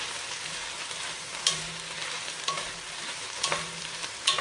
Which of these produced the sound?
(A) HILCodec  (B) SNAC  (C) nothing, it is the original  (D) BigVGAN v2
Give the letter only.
D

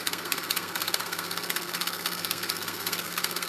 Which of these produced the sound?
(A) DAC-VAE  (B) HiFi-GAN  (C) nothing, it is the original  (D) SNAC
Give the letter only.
D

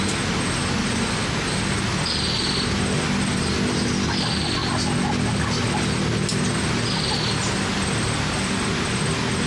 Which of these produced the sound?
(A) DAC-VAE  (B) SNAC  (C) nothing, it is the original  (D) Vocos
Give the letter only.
C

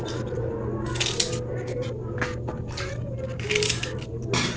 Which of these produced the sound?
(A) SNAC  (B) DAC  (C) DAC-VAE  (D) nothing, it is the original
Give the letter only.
D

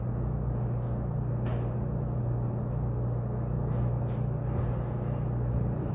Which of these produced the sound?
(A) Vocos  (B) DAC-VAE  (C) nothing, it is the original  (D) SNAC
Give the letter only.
C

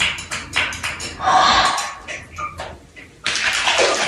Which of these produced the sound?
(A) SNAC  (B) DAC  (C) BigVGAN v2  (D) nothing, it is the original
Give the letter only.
D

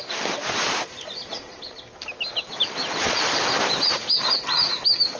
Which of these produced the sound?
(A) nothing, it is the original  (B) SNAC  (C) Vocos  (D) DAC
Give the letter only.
A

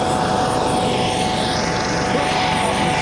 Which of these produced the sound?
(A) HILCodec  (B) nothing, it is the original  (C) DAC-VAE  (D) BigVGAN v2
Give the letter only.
B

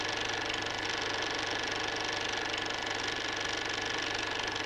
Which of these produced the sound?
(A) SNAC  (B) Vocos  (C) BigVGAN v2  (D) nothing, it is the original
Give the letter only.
D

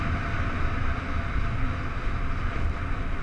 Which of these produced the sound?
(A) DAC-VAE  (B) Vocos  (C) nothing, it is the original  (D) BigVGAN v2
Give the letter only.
C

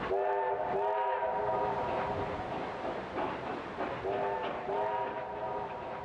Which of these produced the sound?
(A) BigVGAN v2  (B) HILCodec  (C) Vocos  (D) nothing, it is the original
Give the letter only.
D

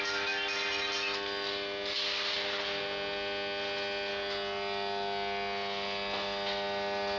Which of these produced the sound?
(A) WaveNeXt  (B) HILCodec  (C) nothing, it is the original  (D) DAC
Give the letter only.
C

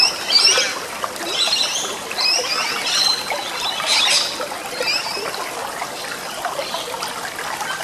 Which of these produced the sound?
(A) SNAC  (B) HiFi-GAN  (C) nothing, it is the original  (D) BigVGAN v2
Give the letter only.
C